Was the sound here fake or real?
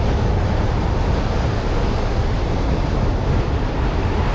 real